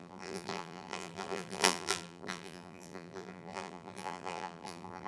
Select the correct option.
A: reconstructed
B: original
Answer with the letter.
A